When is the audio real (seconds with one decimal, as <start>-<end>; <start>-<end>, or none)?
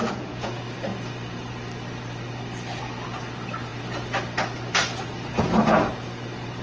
0.5-6.6